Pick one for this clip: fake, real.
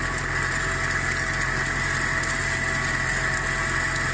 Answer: real